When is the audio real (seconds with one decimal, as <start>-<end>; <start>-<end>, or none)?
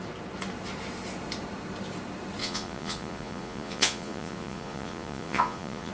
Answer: 0.0-2.4